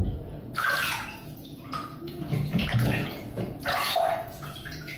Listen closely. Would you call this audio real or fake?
fake